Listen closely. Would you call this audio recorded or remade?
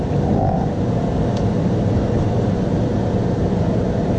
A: recorded